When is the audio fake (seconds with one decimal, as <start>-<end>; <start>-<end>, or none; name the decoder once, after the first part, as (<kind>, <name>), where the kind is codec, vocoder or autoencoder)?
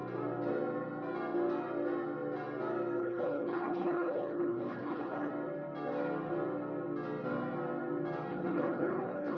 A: 3.0-5.3 (codec, HILCodec); 8.3-9.4